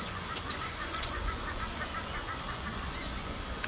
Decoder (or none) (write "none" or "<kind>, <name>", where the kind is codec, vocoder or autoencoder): vocoder, Vocos